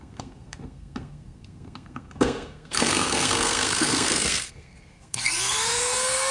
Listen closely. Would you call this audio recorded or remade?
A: remade